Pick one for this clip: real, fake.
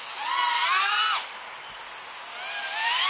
real